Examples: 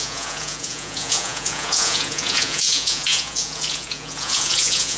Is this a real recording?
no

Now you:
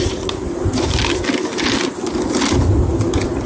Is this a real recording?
yes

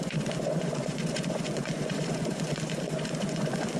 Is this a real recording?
no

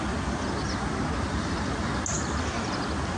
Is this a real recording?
yes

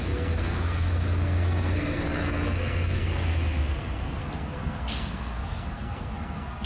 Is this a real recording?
no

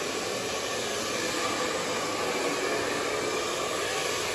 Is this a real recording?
yes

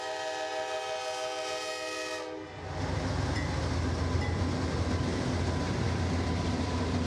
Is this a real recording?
yes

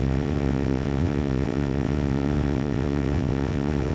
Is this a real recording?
no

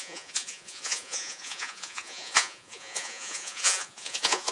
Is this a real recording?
no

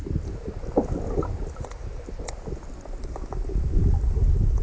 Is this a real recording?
yes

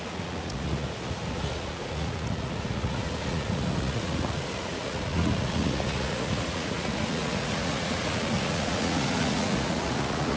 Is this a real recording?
no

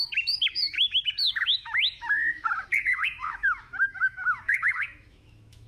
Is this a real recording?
no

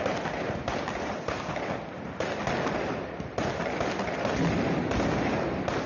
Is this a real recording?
yes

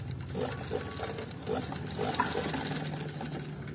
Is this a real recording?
yes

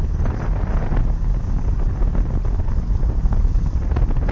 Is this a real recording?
yes